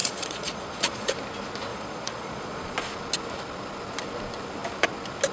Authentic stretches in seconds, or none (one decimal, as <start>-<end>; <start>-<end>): 1.1-1.7; 2.8-5.3